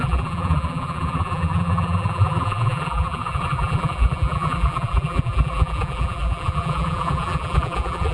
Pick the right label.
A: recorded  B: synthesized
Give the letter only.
B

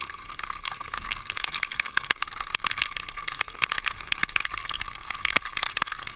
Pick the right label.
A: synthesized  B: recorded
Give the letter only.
A